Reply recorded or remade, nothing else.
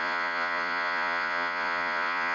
remade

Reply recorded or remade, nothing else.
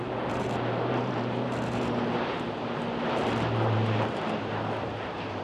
remade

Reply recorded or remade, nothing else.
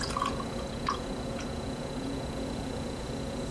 remade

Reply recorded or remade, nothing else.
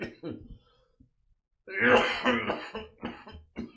recorded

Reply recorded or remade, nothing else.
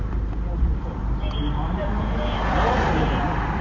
remade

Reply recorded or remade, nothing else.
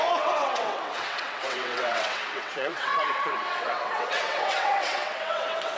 remade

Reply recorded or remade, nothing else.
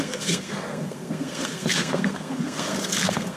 remade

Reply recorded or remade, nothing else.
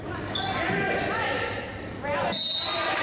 recorded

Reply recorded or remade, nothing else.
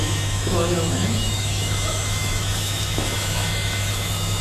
remade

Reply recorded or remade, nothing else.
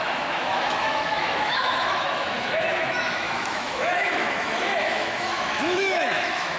remade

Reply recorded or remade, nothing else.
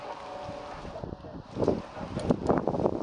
recorded